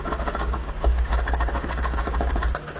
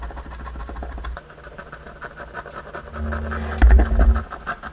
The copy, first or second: first